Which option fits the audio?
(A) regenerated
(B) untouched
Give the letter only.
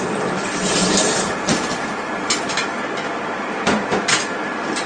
A